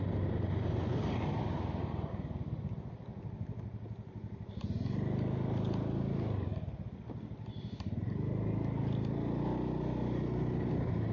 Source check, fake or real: real